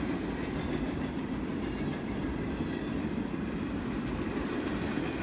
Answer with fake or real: real